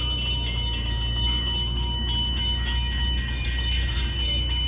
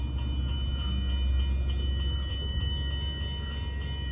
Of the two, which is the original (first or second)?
second